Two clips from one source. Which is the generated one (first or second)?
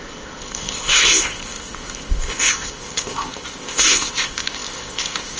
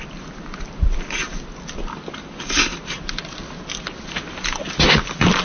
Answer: first